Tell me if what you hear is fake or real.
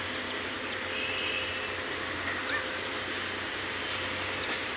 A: real